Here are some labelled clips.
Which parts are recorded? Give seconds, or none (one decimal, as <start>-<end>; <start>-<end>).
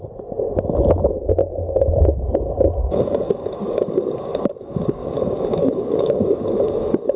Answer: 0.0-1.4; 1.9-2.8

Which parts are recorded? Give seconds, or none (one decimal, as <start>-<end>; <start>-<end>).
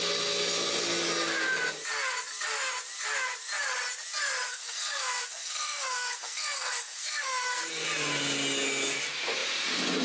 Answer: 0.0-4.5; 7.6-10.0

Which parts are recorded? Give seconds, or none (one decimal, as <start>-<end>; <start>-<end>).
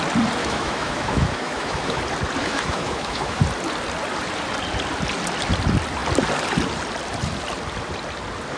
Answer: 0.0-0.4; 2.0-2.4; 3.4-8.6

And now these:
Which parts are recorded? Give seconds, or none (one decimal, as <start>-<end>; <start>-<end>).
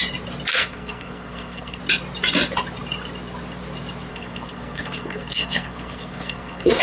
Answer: 0.0-0.5; 1.8-4.1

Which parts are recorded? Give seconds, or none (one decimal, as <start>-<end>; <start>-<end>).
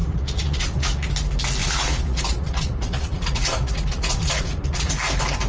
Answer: 1.1-1.6; 4.9-5.5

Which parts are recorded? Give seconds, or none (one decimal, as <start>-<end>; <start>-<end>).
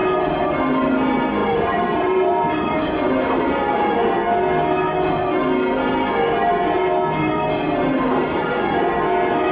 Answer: 0.9-1.4; 3.3-7.9; 8.5-9.5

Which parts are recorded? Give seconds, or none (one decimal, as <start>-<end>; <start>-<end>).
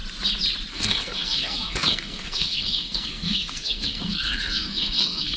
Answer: 0.0-0.7